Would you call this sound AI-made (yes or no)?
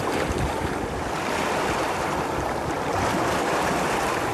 yes